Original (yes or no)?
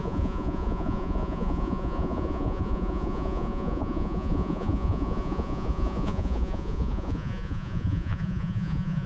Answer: no